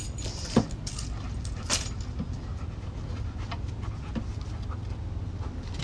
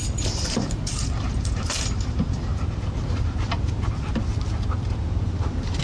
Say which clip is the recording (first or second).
first